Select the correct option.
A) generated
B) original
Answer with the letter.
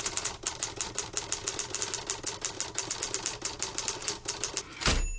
B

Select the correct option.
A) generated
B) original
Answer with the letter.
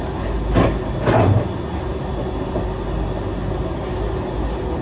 B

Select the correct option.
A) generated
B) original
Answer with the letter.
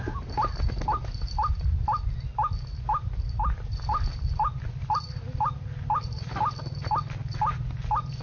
B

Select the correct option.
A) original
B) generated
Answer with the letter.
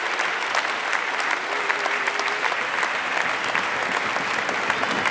A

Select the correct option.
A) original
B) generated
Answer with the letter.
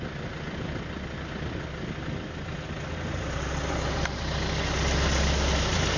A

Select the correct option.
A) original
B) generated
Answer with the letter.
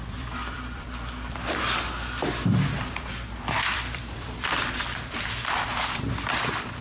B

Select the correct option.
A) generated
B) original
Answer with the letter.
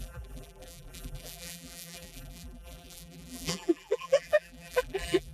A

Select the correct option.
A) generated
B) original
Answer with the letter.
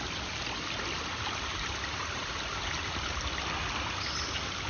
B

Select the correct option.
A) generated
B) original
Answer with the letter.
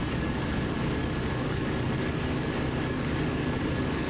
A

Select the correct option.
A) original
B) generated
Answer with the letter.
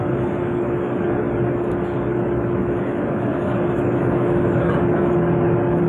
B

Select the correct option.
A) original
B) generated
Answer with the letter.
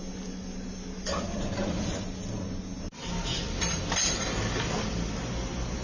A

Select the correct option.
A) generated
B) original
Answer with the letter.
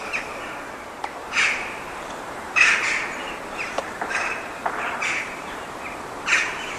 A